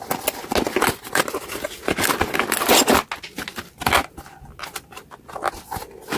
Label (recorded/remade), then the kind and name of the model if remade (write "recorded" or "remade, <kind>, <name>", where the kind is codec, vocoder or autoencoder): recorded